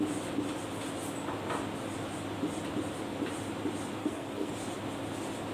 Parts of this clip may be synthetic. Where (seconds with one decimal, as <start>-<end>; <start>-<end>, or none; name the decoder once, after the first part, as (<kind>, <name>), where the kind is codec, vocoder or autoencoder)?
4.0-4.5 (codec, SNAC)